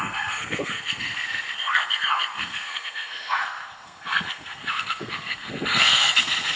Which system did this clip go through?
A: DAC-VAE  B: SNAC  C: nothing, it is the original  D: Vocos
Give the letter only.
B